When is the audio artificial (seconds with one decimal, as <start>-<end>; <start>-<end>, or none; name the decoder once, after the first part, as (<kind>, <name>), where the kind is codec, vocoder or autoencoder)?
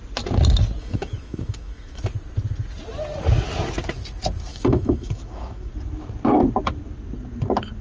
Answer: 0.8-2.0 (autoencoder, DAC-VAE); 4.5-5.7